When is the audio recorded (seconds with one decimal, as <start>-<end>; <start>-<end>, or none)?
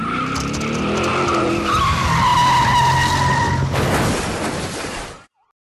0.0-5.7